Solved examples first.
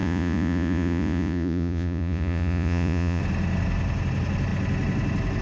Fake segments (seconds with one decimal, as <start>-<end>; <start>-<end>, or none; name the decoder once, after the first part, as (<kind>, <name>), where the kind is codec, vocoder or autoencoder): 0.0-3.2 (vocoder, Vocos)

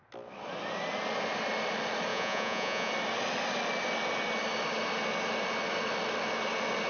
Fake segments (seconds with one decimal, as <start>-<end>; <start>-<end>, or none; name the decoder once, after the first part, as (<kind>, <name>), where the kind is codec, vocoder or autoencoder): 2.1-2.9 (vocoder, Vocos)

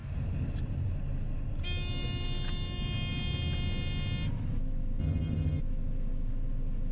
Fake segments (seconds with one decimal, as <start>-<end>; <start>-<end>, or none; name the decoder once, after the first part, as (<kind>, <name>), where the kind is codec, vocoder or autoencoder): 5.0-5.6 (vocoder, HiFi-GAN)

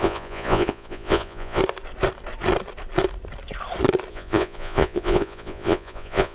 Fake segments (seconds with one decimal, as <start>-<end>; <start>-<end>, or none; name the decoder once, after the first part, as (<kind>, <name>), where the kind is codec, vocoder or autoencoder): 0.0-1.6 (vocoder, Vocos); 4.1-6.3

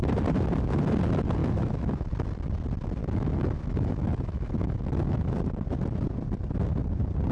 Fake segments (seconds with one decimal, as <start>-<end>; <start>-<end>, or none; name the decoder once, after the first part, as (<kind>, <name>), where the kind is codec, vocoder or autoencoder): 1.4-2.1 (autoencoder, DAC-VAE); 3.0-5.3

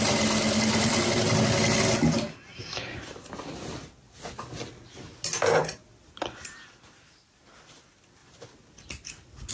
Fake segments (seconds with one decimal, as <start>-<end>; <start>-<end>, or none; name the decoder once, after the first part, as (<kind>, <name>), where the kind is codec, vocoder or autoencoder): none

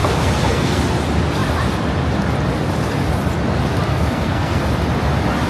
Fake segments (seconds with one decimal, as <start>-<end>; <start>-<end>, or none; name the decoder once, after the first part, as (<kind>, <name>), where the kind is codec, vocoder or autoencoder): 0.0-0.8 (codec, SNAC); 3.9-4.6